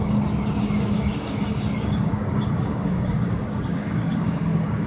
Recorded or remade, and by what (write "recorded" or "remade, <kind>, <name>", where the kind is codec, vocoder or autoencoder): remade, codec, DAC